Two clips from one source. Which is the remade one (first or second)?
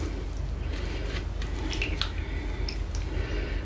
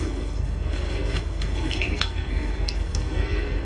second